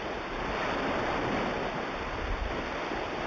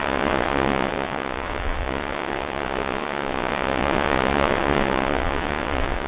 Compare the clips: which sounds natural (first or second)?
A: first